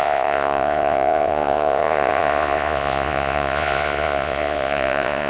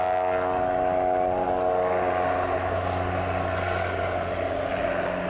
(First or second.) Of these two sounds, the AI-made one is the first